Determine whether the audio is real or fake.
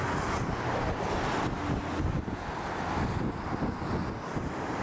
real